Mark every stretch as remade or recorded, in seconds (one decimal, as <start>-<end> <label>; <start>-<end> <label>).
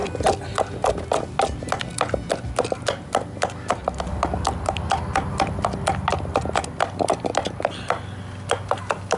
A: 0.0-9.2 recorded